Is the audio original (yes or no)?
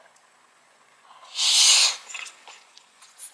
no